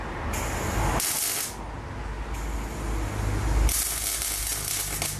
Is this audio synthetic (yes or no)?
no